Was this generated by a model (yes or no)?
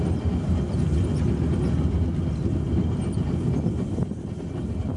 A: no